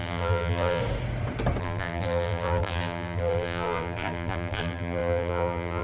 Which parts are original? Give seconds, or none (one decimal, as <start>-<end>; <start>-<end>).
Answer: 0.8-1.6